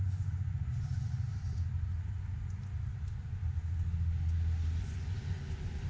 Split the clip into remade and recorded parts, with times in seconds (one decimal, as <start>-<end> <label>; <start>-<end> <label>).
0.0-1.3 remade; 1.3-4.8 recorded; 4.8-5.9 remade